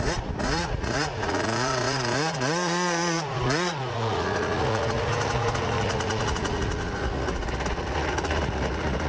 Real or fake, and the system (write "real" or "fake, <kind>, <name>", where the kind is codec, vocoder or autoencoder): fake, vocoder, Vocos